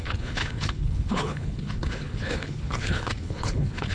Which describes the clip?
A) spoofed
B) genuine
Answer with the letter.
A